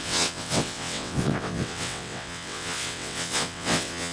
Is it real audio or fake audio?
fake